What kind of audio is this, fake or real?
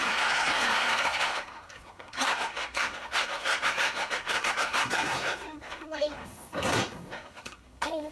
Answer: fake